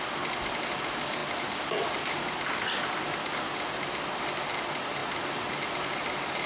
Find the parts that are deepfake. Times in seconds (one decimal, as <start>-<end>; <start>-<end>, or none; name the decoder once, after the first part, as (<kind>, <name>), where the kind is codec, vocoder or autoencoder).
none